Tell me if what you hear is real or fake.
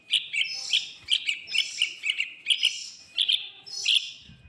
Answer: real